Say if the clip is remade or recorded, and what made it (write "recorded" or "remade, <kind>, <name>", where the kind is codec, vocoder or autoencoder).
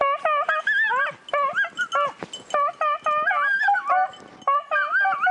recorded